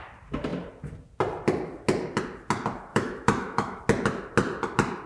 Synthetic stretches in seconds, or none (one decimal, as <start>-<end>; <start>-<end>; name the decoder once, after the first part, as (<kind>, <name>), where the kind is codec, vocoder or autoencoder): 2.9-3.8 (autoencoder, DAC-VAE)